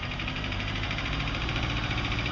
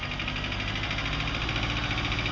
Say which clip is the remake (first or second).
first